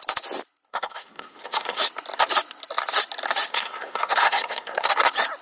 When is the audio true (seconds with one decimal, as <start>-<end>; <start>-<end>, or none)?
0.0-0.7; 1.8-3.5; 4.9-5.4